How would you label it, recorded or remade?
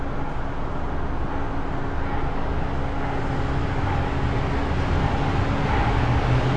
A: recorded